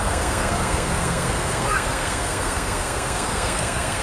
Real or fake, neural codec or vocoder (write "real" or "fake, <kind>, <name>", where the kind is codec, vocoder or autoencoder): fake, codec, SNAC